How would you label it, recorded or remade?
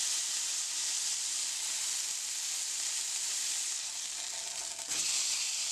recorded